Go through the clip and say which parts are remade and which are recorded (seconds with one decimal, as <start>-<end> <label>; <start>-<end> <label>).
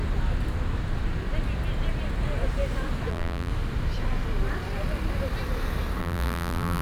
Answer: 0.0-3.1 recorded; 3.1-3.5 remade; 3.5-6.0 recorded; 6.0-6.8 remade